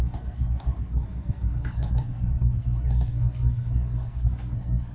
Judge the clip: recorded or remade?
remade